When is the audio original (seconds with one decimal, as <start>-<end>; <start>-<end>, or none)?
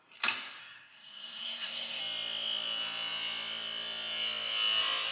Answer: 0.0-0.6; 2.0-5.1